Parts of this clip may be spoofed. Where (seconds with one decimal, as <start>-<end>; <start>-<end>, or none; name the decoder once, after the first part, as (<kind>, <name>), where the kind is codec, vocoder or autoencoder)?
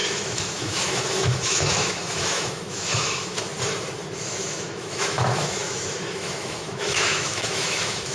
0.0-3.5 (autoencoder, DAC-VAE); 4.2-8.1